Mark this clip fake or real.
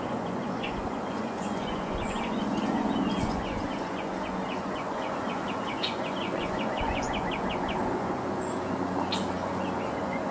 fake